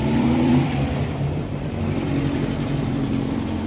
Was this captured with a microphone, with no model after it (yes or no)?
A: no